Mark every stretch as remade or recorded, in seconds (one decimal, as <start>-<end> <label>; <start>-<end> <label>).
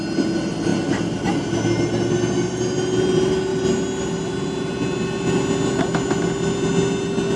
0.0-7.4 recorded